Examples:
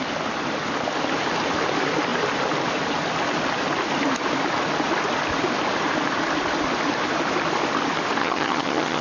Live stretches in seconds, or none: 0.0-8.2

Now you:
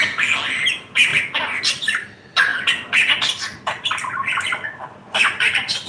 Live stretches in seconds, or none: 0.0-5.9

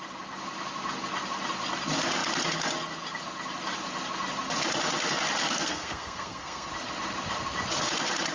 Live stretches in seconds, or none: 0.0-5.4; 6.7-8.3

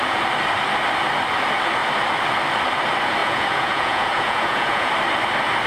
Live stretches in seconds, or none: 0.0-3.2; 4.9-5.7

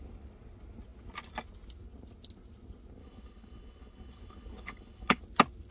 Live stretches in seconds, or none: 0.0-3.0; 5.2-5.7